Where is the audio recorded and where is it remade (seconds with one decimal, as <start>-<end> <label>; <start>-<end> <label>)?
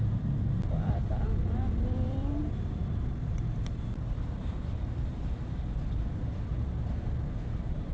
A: 0.0-6.5 remade; 6.5-7.1 recorded; 7.1-7.9 remade